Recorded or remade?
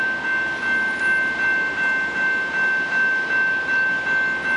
recorded